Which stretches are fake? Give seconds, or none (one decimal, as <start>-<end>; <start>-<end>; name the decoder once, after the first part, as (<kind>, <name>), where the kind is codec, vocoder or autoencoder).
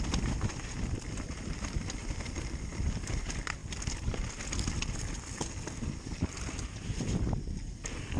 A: none